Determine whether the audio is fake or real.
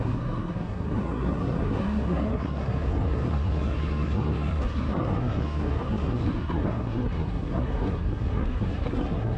fake